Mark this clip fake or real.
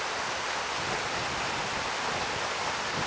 real